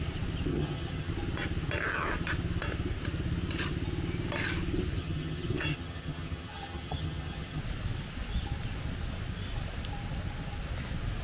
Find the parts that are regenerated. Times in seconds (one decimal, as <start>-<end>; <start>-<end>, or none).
0.5-1.1; 5.0-7.6